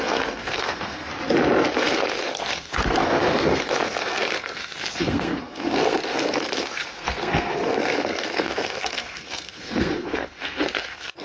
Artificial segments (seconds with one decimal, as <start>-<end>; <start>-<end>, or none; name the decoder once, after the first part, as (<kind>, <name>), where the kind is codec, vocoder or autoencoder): 0.0-1.1 (codec, SNAC); 1.8-11.2

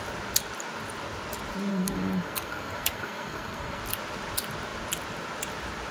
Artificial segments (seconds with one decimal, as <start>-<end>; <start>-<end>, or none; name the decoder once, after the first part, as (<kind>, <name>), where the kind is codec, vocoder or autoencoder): 1.7-3.8 (codec, SNAC)